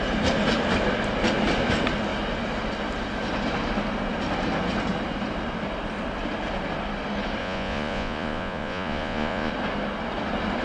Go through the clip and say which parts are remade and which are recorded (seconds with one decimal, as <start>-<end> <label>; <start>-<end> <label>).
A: 0.0-7.4 recorded; 7.4-9.5 remade; 9.5-10.6 recorded